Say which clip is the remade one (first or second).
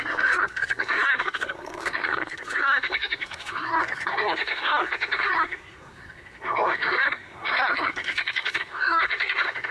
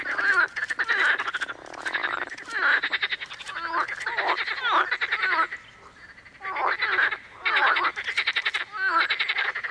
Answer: first